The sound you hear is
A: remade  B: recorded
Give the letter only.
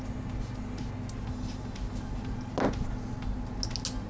B